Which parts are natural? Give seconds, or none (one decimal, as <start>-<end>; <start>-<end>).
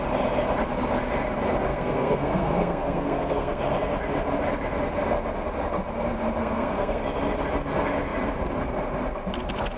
0.0-1.7; 3.6-6.4; 7.0-9.8